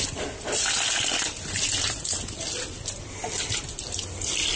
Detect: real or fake real